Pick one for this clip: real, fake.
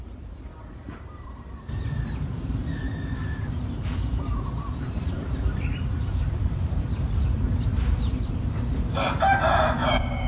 fake